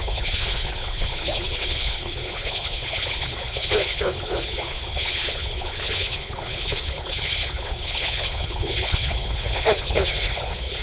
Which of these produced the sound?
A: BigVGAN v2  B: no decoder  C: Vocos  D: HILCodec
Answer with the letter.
D